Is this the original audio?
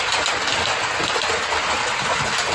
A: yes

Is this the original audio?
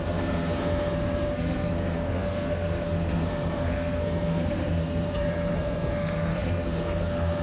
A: no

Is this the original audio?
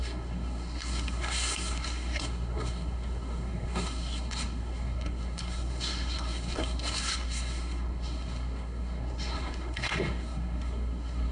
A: no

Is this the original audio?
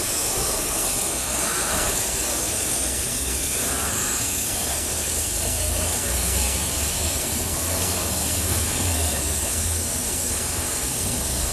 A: no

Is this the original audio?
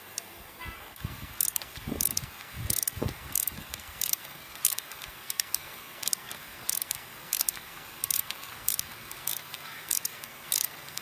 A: no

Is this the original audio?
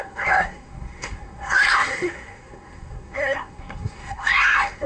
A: no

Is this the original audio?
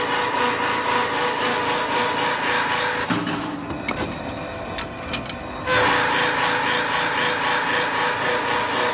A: yes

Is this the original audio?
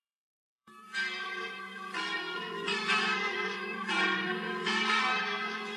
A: no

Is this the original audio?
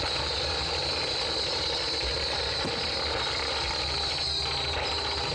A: yes